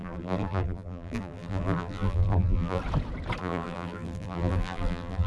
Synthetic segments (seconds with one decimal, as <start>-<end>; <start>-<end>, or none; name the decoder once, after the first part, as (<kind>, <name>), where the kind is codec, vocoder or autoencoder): 0.0-2.8 (vocoder, BigVGAN v2); 3.4-5.3